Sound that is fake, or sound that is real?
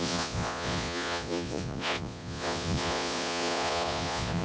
fake